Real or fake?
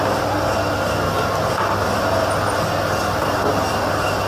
real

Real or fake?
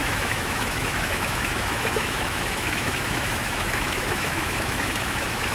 fake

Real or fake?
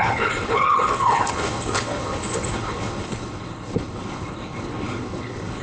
fake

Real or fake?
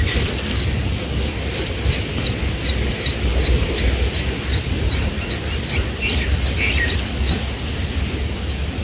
real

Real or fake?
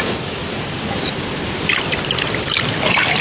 real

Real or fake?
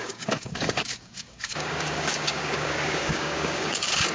fake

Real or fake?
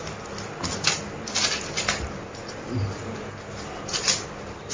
real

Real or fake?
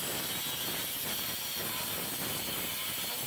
real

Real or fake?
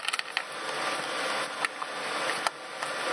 real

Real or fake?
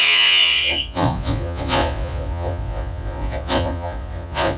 fake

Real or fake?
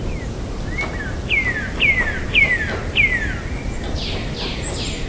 real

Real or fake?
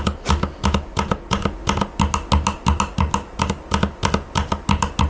real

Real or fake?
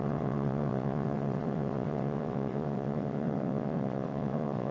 fake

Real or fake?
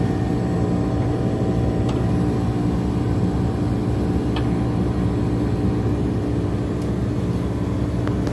real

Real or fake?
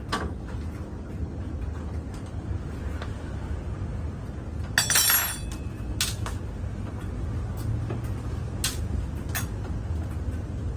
real